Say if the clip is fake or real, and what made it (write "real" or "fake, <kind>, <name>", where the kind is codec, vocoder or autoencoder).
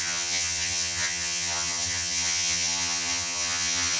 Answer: fake, vocoder, HiFi-GAN